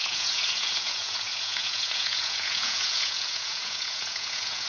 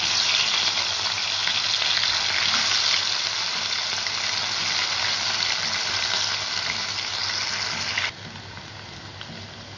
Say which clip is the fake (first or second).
first